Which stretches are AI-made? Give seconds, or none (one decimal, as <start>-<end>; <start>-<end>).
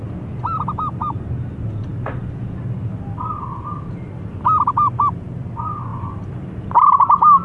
none